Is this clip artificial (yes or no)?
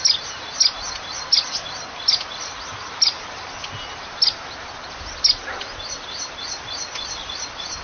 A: no